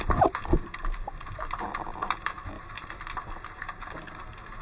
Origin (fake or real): real